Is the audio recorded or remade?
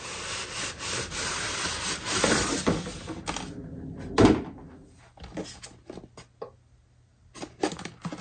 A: recorded